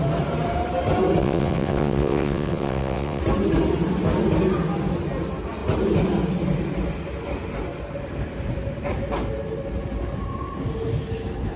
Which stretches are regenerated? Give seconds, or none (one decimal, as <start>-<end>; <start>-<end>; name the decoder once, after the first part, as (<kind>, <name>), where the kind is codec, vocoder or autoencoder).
1.2-3.2 (vocoder, WaveNeXt)